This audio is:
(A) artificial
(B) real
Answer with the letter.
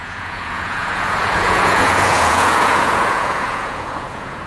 A